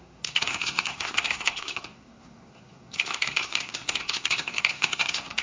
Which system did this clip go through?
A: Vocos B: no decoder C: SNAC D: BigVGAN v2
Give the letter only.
C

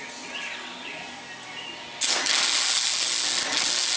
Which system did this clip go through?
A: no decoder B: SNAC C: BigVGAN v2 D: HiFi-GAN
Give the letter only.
A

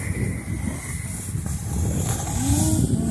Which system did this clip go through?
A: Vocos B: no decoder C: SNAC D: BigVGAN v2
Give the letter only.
B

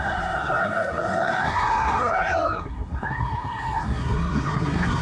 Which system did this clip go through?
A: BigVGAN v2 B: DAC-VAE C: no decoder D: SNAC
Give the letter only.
D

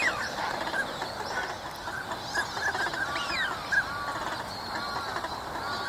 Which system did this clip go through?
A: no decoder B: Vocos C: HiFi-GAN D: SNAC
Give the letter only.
A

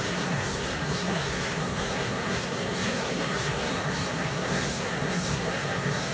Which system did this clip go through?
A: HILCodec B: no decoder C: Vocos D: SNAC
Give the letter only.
D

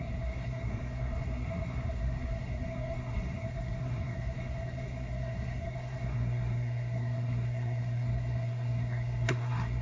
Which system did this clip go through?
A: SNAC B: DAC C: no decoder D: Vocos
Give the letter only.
A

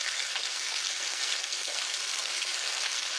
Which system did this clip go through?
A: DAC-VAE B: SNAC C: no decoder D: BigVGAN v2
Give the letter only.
B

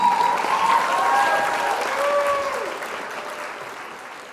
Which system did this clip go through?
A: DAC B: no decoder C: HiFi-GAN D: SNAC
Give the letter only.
B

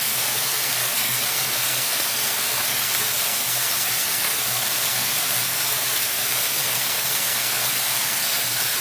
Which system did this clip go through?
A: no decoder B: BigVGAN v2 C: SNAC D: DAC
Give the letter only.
C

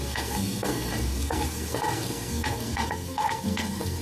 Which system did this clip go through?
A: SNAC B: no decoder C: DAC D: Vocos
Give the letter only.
A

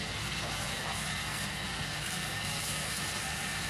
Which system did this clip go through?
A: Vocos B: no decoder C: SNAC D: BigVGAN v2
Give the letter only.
C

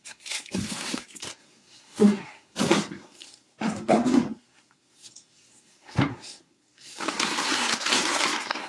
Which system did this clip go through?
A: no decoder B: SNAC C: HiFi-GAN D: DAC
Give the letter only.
B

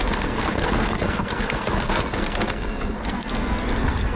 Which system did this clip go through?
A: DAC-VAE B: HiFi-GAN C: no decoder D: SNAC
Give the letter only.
D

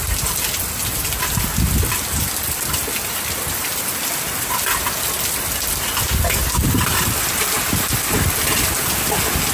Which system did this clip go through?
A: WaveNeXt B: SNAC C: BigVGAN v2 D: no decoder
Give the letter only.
D